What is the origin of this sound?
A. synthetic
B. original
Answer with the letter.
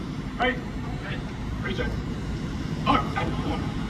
A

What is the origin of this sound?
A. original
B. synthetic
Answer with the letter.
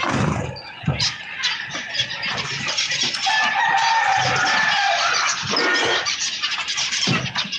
A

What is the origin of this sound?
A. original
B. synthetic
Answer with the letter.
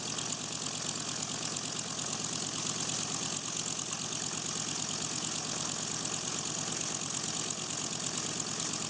A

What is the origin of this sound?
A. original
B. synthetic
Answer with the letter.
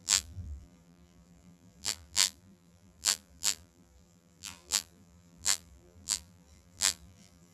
B